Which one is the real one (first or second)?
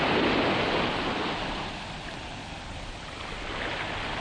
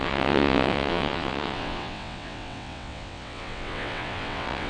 first